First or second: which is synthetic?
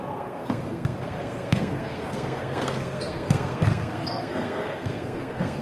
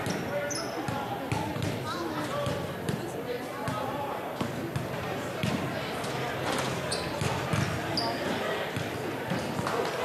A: first